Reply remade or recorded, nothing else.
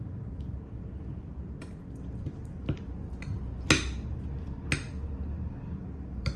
recorded